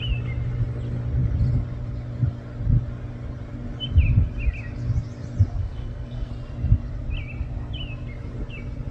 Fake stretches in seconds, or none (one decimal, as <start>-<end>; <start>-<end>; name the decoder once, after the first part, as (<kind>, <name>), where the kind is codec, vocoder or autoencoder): 5.6-6.3 (codec, SNAC)